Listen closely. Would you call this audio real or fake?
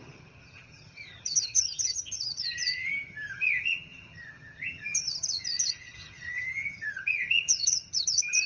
fake